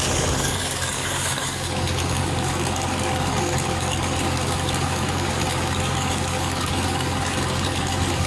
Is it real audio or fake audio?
fake